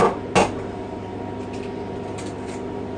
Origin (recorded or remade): recorded